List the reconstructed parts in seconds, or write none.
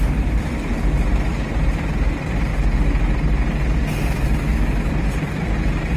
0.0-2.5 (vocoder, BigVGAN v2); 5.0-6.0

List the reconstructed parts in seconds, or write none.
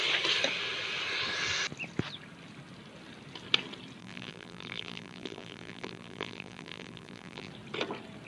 4.0-7.5 (vocoder, BigVGAN v2)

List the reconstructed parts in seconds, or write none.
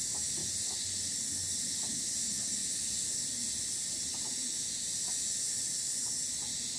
0.4-1.7 (vocoder, BigVGAN v2)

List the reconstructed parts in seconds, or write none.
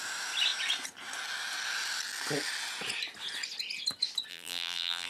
4.3-5.1 (vocoder, BigVGAN v2)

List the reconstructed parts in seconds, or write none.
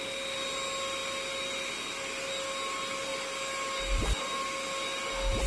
none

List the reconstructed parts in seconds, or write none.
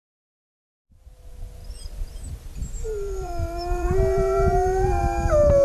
1.6-5.0 (vocoder, BigVGAN v2)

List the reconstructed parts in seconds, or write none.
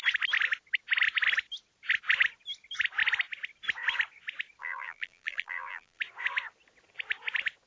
4.6-6.0 (vocoder, BigVGAN v2)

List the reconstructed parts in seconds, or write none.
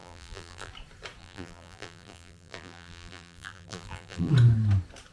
0.0-0.7 (vocoder, BigVGAN v2); 1.2-4.3